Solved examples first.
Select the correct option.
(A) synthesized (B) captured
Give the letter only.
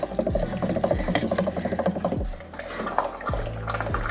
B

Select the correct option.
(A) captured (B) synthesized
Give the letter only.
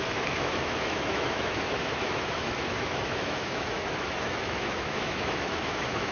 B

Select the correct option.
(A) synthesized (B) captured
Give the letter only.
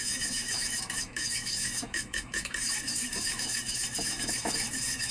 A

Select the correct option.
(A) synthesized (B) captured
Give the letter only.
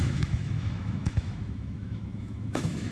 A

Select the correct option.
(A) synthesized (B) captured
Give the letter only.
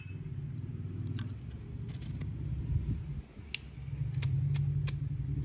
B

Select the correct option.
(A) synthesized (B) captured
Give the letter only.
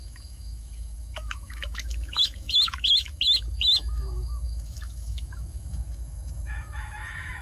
A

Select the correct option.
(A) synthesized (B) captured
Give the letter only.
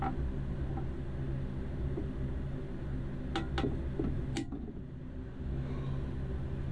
B